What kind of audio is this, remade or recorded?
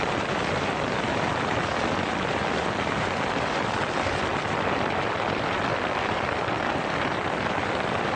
remade